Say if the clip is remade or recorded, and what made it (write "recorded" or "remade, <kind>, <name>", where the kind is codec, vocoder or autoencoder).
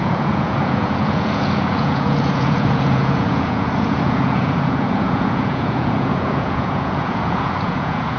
remade, vocoder, Vocos